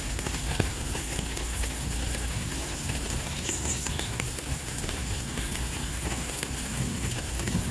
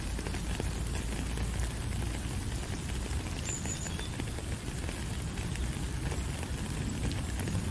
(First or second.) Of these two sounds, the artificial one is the first